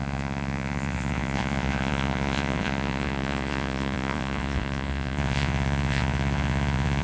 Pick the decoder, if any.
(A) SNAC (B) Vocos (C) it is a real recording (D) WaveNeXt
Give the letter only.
B